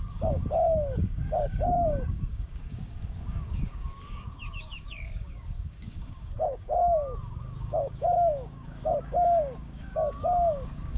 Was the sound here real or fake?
fake